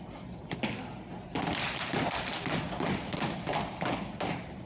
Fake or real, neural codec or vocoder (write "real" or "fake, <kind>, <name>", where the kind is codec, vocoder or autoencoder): real